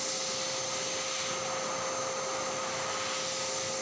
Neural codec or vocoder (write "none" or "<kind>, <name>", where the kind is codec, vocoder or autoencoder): none